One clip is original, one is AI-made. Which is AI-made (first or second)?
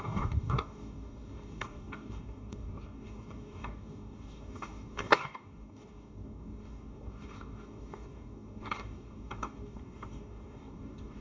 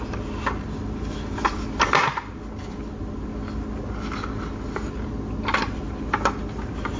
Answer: first